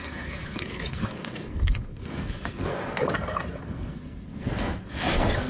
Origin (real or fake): fake